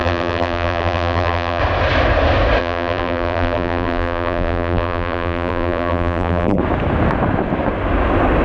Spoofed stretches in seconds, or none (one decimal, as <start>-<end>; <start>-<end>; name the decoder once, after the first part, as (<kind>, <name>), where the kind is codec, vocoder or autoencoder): 0.0-1.6 (vocoder, BigVGAN v2); 2.6-6.6